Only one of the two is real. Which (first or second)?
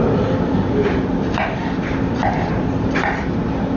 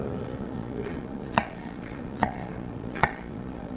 first